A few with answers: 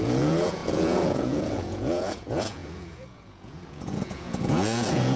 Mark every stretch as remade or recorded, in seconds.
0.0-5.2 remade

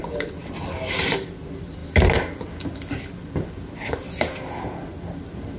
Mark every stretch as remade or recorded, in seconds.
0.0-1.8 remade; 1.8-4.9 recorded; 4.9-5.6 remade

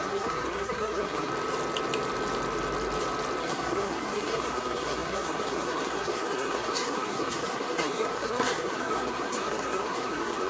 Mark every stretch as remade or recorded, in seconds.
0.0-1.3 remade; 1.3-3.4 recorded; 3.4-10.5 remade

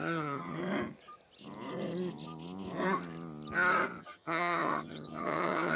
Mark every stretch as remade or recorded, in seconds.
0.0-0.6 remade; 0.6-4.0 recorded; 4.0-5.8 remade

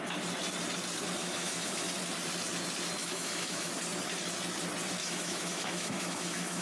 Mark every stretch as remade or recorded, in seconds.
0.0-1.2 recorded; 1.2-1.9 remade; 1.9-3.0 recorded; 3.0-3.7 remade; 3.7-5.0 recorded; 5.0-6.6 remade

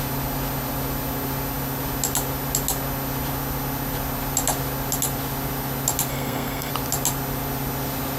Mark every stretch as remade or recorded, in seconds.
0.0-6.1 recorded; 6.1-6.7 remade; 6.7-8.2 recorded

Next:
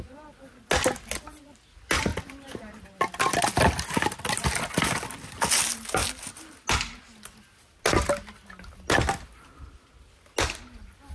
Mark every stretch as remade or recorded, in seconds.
0.0-11.1 recorded